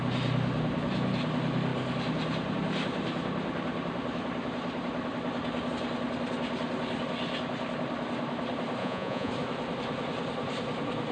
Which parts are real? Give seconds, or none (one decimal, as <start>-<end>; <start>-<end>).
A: 0.0-8.8; 9.3-11.1

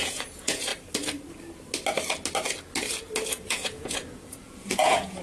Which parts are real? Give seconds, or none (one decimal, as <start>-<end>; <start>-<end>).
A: 0.7-3.3

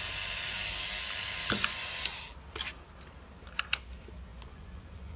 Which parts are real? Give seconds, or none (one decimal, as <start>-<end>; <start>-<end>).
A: 0.0-1.6; 2.1-4.3

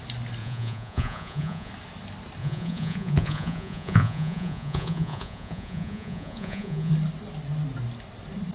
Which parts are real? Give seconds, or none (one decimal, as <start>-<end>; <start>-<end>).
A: 0.0-0.4; 1.7-2.4; 6.9-8.5

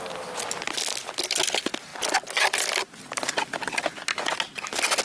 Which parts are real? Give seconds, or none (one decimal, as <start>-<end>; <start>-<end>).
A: 0.0-5.0

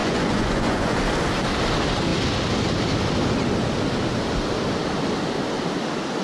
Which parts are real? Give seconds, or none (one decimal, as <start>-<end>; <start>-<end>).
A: 1.0-6.2